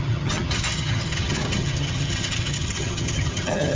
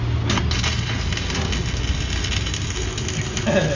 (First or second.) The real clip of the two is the second